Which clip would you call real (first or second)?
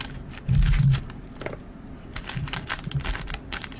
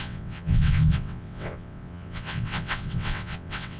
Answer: first